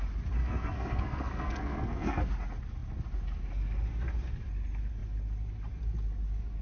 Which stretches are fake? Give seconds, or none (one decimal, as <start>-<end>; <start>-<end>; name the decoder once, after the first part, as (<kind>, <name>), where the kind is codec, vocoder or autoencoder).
0.4-2.3 (codec, SNAC)